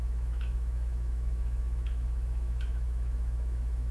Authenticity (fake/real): fake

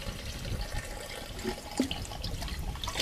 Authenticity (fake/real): real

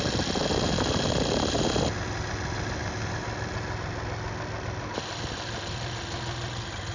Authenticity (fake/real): real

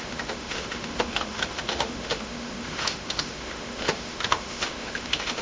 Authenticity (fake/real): fake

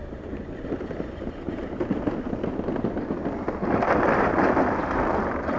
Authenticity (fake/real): real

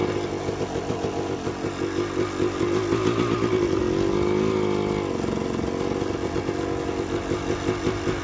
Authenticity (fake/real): real